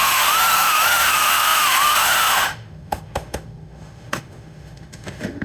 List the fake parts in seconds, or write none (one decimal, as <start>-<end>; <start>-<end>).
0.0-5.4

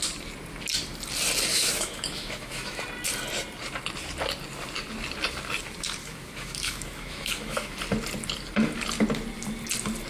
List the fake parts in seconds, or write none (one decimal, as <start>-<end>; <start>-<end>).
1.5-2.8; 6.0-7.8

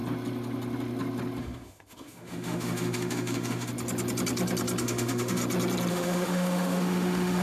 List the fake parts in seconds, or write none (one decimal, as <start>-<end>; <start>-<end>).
1.4-3.7; 4.8-5.4; 5.9-7.4

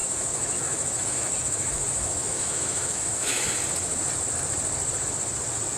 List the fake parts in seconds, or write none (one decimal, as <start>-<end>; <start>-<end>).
0.0-3.5

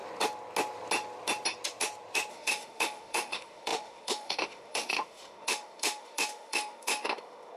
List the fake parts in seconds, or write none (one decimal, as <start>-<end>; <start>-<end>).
2.3-7.6

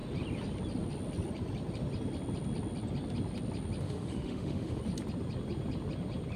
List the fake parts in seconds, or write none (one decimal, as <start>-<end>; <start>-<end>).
3.8-4.8

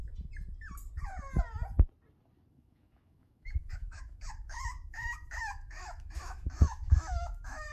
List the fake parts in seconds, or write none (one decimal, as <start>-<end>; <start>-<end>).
2.5-7.7

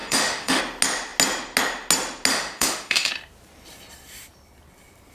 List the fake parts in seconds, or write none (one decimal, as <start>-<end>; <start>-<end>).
0.0-0.6; 2.3-3.1